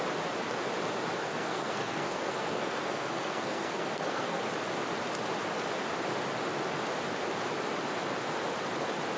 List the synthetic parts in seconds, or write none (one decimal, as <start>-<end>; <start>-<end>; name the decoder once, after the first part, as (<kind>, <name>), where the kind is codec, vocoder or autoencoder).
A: 1.2-4.4 (codec, SNAC)